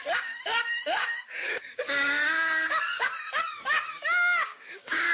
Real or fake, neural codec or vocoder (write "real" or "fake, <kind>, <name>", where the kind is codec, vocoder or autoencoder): fake, codec, DAC